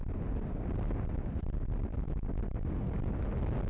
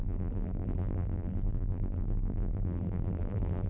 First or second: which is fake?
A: second